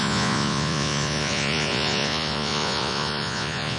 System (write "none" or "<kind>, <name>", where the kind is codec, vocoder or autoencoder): vocoder, Vocos